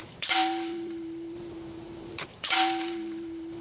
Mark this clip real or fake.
fake